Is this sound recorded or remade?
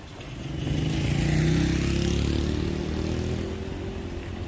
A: recorded